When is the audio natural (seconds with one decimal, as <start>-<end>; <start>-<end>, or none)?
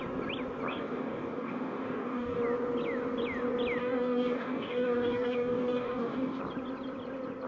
0.0-0.7; 2.4-3.8; 6.4-7.5